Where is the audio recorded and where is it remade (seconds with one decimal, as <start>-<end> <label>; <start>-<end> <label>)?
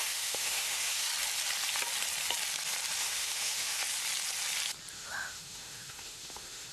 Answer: 0.0-1.1 remade; 1.1-3.0 recorded; 3.0-3.8 remade; 3.8-4.9 recorded; 4.9-6.7 remade